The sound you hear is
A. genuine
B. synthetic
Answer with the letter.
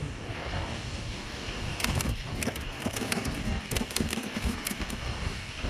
B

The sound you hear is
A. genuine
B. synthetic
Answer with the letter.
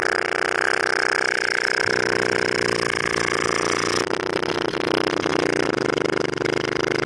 A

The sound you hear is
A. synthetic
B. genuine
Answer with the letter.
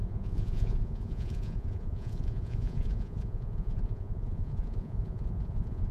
A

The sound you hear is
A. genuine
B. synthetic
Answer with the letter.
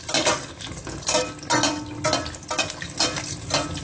A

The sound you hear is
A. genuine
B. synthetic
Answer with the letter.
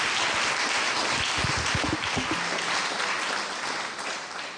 A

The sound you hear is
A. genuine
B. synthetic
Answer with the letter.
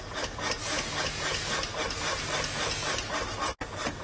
A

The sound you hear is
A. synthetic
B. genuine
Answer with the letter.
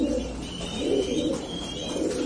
B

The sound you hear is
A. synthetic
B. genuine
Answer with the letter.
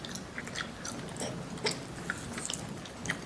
B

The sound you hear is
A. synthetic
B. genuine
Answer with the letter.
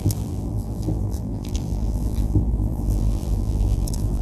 A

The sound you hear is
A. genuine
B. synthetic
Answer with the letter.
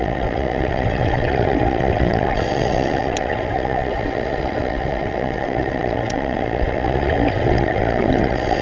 B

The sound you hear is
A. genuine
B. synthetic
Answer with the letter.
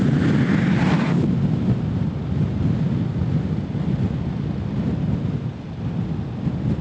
A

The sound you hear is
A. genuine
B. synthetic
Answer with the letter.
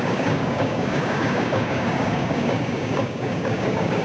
B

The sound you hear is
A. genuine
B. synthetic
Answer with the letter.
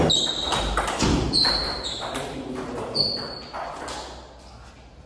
A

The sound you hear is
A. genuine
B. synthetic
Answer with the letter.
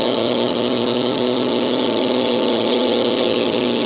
B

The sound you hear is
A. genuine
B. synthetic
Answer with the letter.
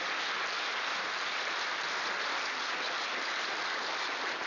A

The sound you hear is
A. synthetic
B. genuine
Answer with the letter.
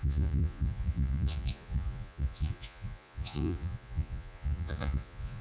A